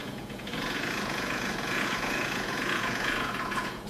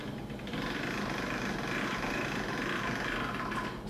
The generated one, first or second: first